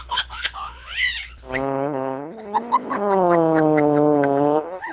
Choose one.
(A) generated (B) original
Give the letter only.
A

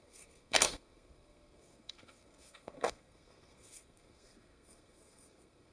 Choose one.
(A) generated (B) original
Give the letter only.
A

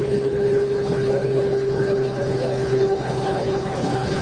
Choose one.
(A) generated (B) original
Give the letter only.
A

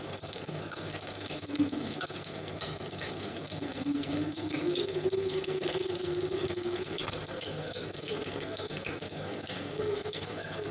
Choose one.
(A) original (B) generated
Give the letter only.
B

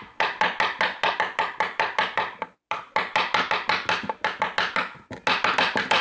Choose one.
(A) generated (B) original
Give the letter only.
B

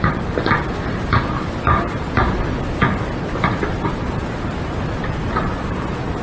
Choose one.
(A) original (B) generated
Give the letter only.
A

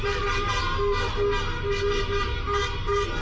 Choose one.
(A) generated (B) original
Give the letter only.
B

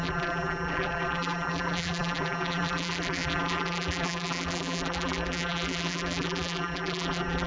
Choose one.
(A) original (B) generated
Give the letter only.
B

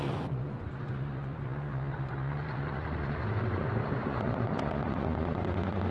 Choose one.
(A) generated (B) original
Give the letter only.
A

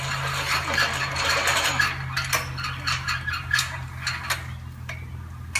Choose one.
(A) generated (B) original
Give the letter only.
B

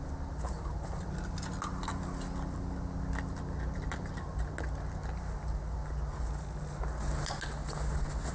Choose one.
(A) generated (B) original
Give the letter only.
B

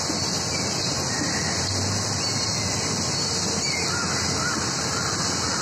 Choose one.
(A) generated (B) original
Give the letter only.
B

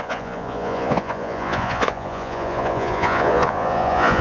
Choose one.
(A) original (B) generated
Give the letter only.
B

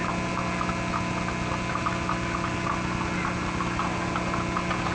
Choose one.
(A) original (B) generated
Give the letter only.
A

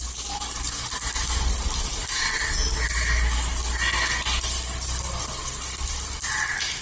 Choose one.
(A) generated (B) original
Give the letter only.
B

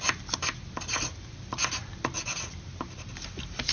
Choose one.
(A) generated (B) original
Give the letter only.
B